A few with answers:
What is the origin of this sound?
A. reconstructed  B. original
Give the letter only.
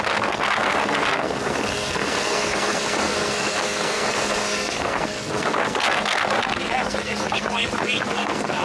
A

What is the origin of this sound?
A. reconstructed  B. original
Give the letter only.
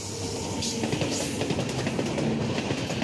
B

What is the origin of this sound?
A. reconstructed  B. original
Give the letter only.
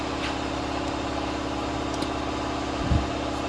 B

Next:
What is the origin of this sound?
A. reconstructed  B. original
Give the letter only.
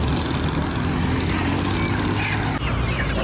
B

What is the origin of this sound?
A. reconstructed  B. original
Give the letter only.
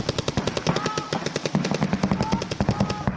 B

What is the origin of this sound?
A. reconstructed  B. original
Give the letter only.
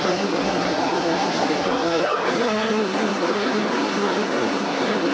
A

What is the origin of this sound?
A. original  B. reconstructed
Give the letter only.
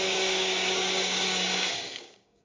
B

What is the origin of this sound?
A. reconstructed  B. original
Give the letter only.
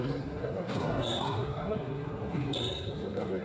A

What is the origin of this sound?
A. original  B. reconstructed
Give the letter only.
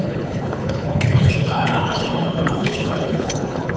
B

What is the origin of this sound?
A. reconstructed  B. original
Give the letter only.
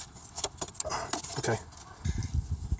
B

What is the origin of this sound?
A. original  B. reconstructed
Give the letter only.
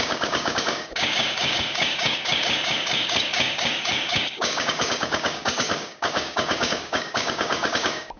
B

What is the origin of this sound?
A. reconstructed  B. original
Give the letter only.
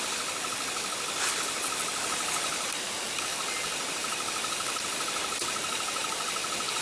B